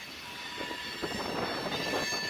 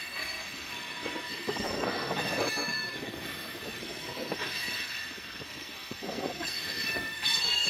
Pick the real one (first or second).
first